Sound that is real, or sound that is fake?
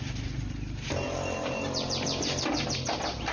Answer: fake